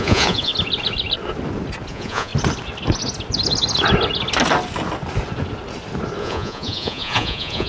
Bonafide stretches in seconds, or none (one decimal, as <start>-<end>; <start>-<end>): 0.5-1.9; 2.3-6.2